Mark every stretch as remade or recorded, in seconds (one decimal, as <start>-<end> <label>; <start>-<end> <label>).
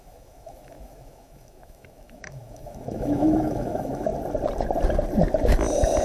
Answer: 0.0-4.1 remade; 4.1-6.0 recorded